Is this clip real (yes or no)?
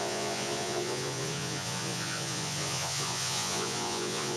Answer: no